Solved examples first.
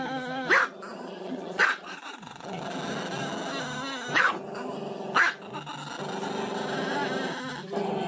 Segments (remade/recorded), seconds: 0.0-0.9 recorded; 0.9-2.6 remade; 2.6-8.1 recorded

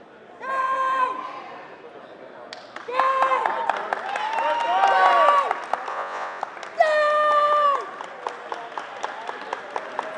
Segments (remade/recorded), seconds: 0.0-5.9 recorded; 5.9-6.4 remade; 6.4-10.2 recorded

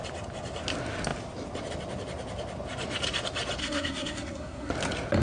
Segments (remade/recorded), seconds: 0.0-3.6 recorded; 3.6-4.7 remade; 4.7-5.2 recorded